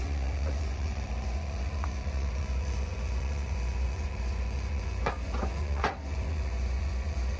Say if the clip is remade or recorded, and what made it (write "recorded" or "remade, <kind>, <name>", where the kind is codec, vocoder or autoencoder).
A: remade, vocoder, Vocos